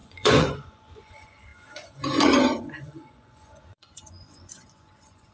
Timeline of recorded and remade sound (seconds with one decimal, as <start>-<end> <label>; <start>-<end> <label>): 0.0-5.3 remade